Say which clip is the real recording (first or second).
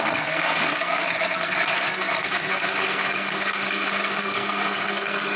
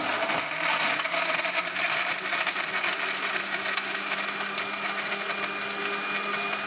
second